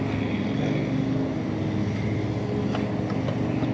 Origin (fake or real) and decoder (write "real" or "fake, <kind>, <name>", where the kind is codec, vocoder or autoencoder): real